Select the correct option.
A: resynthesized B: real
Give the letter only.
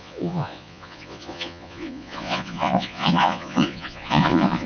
A